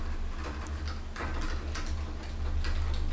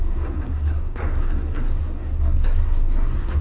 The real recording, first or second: first